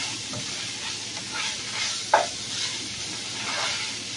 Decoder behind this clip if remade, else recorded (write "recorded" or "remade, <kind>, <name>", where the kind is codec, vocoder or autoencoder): recorded